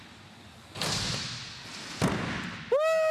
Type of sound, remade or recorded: recorded